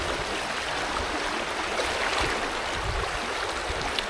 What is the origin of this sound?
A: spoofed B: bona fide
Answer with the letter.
B